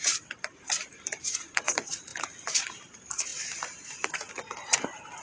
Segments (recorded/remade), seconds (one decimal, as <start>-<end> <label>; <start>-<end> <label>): 0.0-2.1 remade; 2.1-2.7 recorded; 2.7-5.2 remade